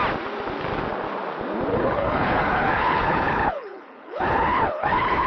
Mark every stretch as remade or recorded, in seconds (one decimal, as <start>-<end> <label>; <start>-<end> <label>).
0.0-1.7 recorded; 1.7-5.3 remade